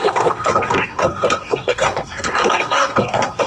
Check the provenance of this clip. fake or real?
fake